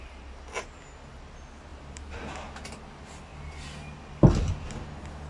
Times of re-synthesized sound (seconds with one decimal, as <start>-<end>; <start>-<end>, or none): none